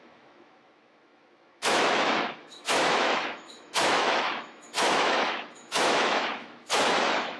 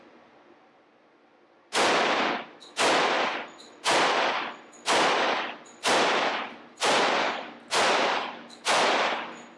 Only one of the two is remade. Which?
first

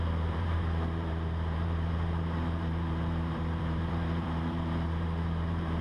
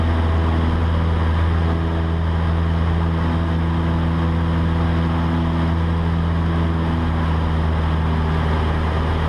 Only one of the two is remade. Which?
first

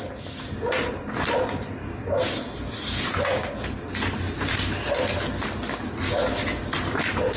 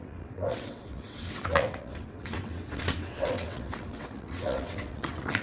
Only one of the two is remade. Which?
second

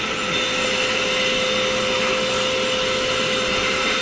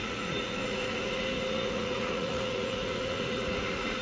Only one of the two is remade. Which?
second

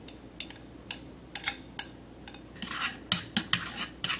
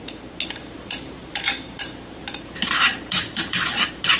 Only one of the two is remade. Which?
second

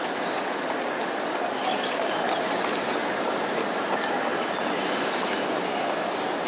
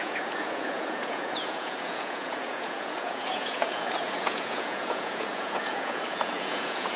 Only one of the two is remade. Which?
second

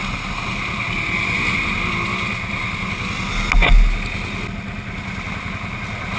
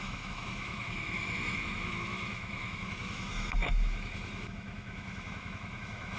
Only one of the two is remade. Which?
second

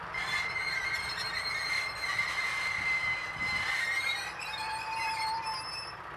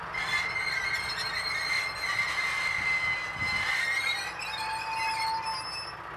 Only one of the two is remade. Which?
first